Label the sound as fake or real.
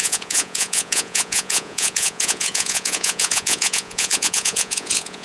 fake